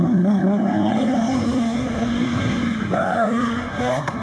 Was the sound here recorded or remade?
remade